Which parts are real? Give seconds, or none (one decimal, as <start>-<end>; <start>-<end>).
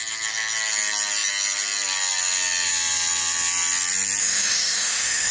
0.0-4.2